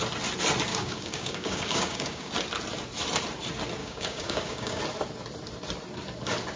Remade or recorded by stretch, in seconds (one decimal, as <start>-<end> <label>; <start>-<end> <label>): 0.0-0.7 recorded; 0.7-2.3 remade; 2.3-3.8 recorded; 3.8-4.8 remade; 4.8-6.6 recorded